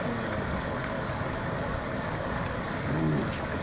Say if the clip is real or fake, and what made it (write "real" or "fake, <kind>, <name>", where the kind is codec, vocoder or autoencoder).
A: fake, codec, DAC